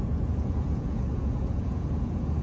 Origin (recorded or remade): remade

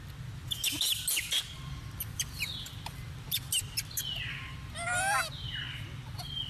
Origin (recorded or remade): remade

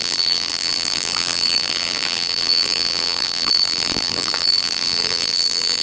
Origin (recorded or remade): remade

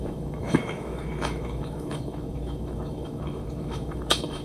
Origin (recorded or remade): remade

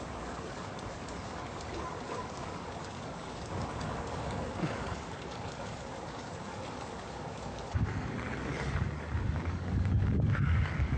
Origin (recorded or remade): remade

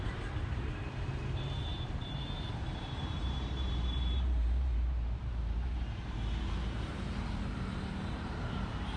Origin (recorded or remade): remade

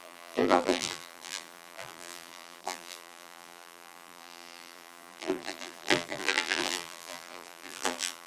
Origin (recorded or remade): remade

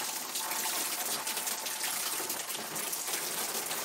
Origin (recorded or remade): recorded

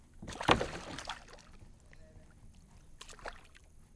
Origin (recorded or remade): recorded